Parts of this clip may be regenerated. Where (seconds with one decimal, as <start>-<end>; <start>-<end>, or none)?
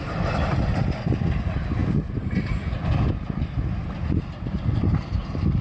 none